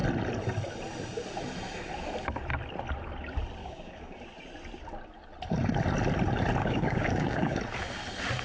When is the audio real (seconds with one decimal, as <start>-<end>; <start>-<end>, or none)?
0.0-3.6; 4.2-6.6; 7.6-8.4

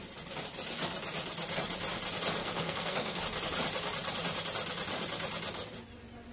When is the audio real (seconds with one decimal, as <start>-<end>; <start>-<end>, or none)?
0.0-2.4; 3.2-6.3

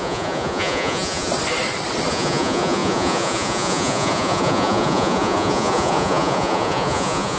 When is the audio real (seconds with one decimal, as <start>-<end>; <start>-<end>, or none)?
1.3-2.1

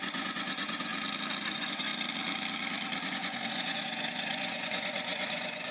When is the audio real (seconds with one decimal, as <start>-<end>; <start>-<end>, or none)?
0.9-1.5; 1.9-3.1

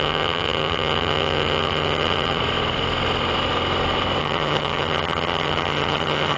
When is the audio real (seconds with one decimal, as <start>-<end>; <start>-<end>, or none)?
2.4-4.2

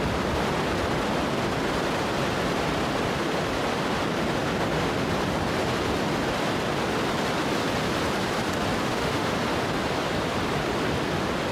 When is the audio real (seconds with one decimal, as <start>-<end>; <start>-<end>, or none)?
0.0-8.8; 9.3-11.5

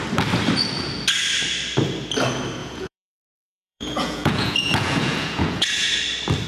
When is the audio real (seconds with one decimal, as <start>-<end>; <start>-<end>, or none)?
0.0-2.6; 5.9-6.5

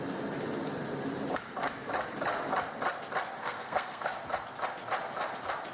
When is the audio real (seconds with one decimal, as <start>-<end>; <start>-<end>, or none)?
0.0-3.4; 4.1-5.7